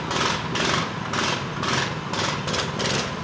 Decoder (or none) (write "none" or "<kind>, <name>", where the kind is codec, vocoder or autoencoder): none